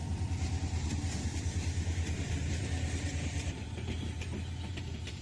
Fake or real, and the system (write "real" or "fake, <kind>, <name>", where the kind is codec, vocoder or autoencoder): fake, vocoder, BigVGAN v2